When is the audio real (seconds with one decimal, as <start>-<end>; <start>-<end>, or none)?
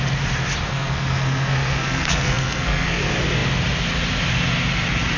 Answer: 0.0-0.7; 3.0-5.2